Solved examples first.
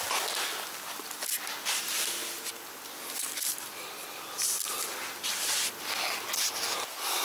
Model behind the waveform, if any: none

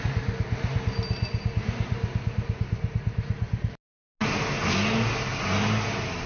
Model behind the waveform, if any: none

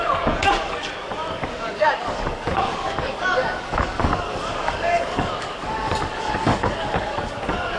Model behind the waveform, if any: codec, DAC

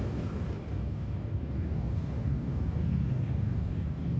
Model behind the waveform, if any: codec, DAC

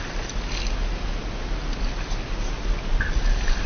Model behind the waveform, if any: none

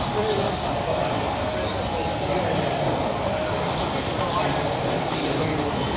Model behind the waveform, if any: none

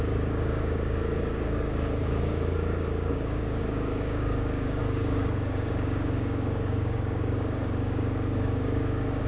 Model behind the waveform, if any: codec, DAC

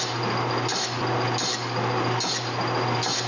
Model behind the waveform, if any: none